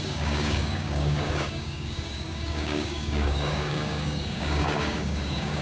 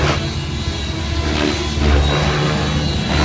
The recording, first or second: second